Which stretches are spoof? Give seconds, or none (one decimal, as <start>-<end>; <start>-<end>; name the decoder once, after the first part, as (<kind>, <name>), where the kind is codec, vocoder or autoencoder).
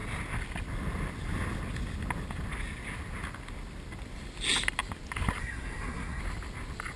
5.4-6.2 (codec, SNAC)